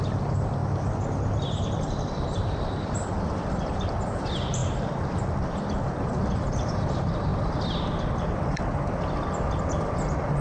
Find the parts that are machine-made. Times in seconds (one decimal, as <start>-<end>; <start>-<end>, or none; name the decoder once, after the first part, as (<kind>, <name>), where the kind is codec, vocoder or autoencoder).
0.0-0.6 (vocoder, BigVGAN v2); 1.4-4.6; 5.6-10.4